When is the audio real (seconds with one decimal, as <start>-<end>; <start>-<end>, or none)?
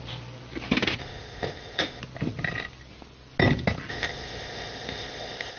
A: 0.0-1.0; 2.0-3.9